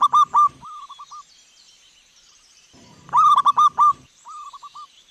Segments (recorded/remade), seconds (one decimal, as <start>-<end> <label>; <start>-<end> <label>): 0.0-1.7 recorded; 1.7-5.1 remade